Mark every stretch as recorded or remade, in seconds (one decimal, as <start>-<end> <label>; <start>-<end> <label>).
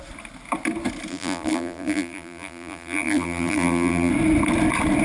0.0-1.1 recorded; 1.1-4.1 remade; 4.1-5.0 recorded